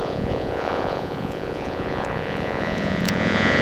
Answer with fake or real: fake